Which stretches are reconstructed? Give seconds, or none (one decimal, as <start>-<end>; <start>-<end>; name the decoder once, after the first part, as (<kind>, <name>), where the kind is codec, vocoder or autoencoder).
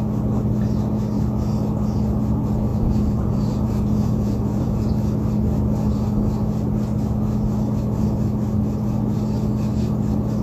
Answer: 2.7-4.9 (vocoder, Vocos)